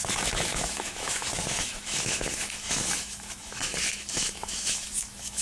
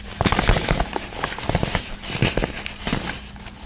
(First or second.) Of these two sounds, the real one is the second